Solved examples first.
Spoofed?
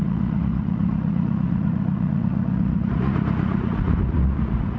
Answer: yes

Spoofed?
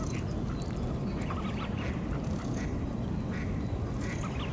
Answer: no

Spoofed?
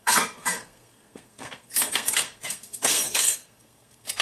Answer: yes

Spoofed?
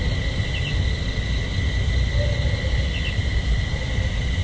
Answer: no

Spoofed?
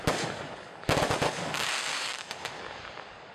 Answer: yes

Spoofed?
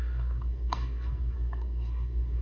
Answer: yes